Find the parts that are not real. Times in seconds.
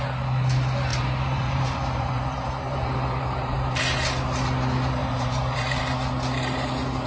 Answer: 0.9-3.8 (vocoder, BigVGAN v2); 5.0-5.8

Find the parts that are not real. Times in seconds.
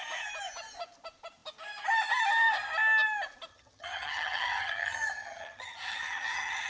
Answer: 3.5-6.7 (vocoder, HiFi-GAN)